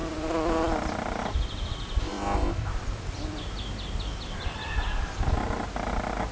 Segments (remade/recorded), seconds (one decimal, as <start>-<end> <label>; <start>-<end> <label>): 0.0-2.0 recorded; 2.0-2.7 remade; 2.7-6.3 recorded